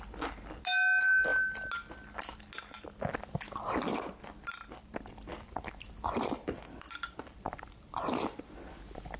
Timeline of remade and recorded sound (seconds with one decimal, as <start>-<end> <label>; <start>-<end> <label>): 0.0-4.8 recorded; 4.8-9.2 remade

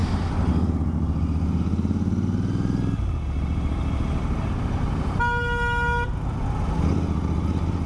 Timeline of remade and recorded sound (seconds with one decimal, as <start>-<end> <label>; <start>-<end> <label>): 0.0-7.9 recorded